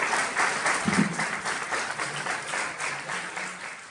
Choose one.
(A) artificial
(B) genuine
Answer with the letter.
A